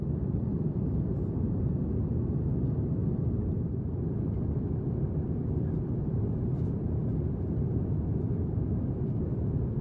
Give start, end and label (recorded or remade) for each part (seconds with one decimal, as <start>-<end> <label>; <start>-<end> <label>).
0.0-0.5 recorded; 0.5-1.9 remade; 1.9-3.0 recorded; 3.0-6.6 remade; 6.6-7.0 recorded; 7.0-7.8 remade; 7.8-9.8 recorded